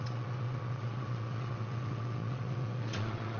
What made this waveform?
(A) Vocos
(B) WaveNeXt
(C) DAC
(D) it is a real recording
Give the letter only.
B